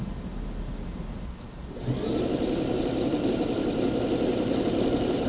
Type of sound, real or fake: real